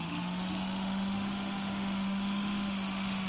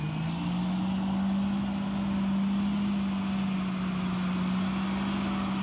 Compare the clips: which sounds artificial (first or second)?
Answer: first